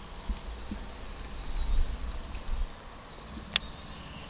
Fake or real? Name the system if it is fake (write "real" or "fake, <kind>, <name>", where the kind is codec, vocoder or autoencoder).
real